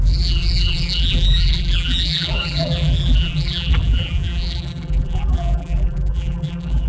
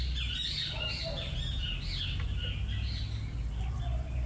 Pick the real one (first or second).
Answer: second